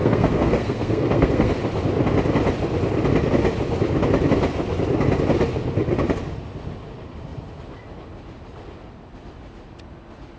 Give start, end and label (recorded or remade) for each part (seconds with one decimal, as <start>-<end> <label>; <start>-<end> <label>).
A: 0.0-1.5 remade; 1.5-10.4 recorded